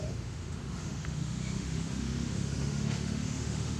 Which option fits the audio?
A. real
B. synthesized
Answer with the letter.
B